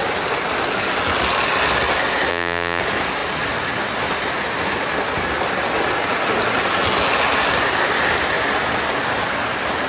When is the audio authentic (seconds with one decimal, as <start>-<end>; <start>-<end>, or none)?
0.0-2.3; 2.8-9.9